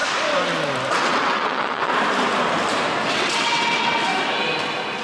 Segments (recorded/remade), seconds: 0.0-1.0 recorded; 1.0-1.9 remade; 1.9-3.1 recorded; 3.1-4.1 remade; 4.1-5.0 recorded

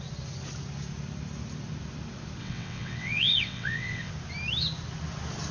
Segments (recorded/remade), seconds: 0.0-2.4 recorded; 2.4-4.1 remade; 4.1-5.5 recorded

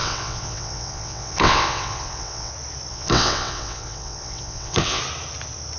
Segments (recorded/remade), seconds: 0.0-2.5 remade; 2.5-2.9 recorded; 2.9-5.0 remade; 5.0-5.8 recorded

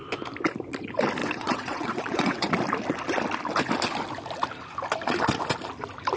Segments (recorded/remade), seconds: 0.0-1.2 recorded; 1.2-2.5 remade; 2.5-6.2 recorded

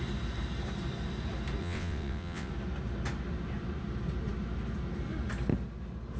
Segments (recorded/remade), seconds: 0.0-1.6 recorded; 1.6-2.5 remade; 2.5-6.2 recorded